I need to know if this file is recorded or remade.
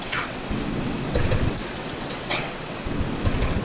remade